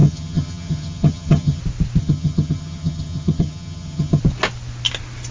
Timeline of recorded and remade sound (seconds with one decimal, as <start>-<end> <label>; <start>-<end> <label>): 0.0-1.6 remade; 1.6-2.0 recorded; 2.0-4.2 remade; 4.2-5.3 recorded

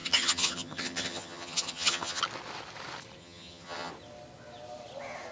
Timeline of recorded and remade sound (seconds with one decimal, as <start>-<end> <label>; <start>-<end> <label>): 0.0-2.2 remade; 2.2-3.2 recorded; 3.2-3.9 remade; 3.9-5.3 recorded

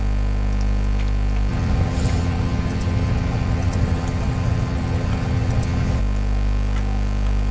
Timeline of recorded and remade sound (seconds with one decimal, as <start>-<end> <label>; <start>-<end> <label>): 0.0-1.5 recorded; 1.5-6.0 remade; 6.0-7.5 recorded

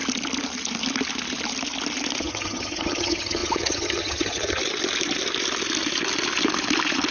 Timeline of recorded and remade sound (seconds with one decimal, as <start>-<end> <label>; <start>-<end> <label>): 0.0-2.2 recorded; 2.2-4.6 remade; 4.6-7.1 recorded

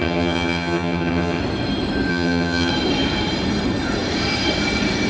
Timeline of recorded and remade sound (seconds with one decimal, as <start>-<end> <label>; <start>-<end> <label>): 0.0-1.4 remade; 1.4-2.1 recorded; 2.1-2.7 remade; 2.7-5.1 recorded